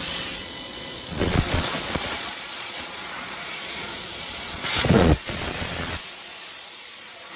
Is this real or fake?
fake